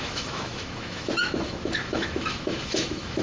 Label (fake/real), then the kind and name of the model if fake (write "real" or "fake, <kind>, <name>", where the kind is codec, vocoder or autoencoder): fake, autoencoder, DAC-VAE